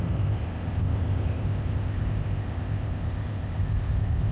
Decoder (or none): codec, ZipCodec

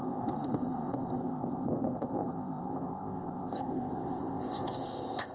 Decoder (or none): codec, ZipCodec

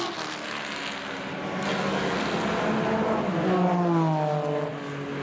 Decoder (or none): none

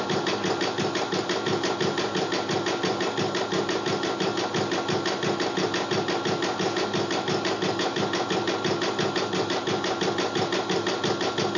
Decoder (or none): none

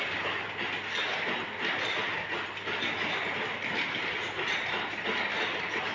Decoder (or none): none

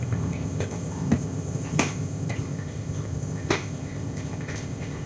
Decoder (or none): codec, ZipCodec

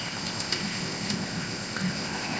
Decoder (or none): codec, ZipCodec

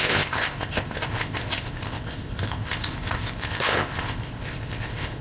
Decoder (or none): codec, ZipCodec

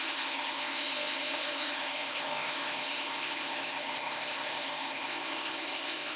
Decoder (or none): codec, ZipCodec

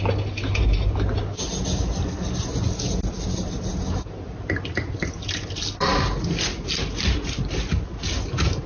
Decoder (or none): none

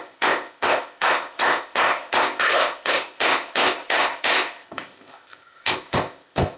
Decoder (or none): codec, ZipCodec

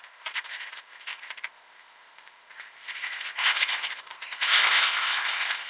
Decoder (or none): codec, ZipCodec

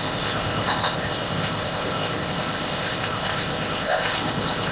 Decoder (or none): codec, ZipCodec